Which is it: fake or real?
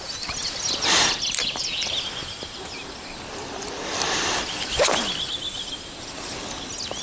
real